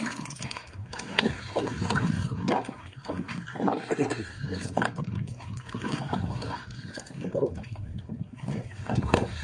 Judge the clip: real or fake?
fake